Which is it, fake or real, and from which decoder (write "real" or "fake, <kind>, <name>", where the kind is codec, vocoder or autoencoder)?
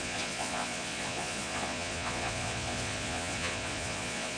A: fake, vocoder, Vocos